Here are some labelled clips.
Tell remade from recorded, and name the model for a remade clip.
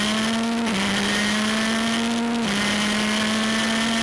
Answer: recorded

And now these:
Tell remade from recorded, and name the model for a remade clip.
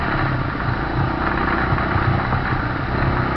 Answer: recorded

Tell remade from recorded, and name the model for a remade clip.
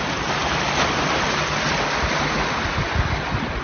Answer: recorded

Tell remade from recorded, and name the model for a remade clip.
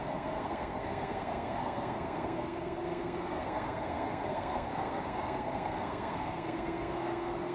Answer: remade, codec, SNAC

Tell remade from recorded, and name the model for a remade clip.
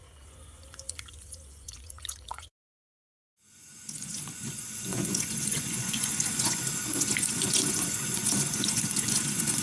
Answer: remade, vocoder, Vocos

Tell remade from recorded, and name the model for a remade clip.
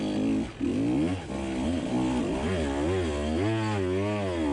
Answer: recorded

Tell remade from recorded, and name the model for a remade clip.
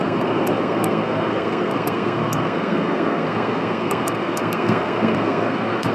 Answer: remade, codec, SNAC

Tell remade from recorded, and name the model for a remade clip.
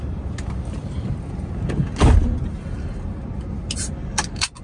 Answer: recorded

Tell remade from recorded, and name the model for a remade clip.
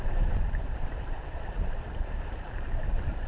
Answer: remade, vocoder, BigVGAN v2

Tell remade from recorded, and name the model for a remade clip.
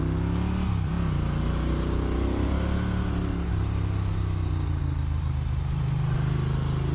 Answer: recorded